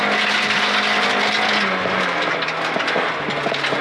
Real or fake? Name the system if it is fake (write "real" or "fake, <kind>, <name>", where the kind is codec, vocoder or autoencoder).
real